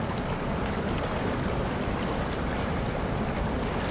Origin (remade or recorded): remade